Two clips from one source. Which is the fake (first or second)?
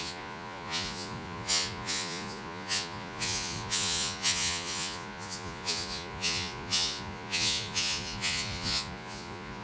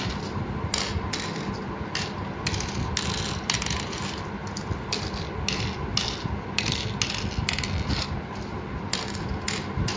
first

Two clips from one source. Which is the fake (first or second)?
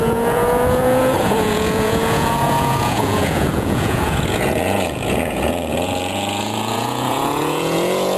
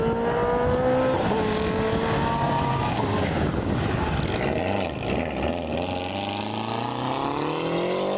first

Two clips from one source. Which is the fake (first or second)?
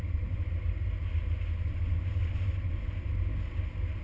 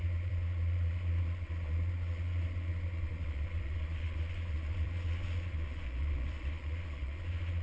second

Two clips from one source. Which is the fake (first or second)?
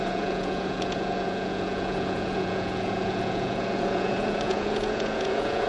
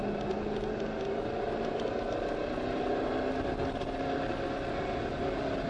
first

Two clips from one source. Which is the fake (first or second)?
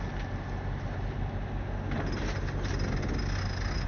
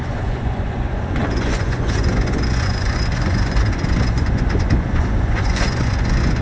second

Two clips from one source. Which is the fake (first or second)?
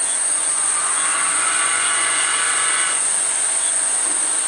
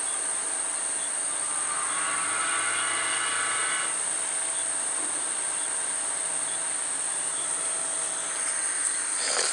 first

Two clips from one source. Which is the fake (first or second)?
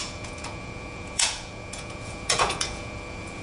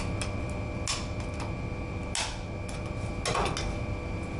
first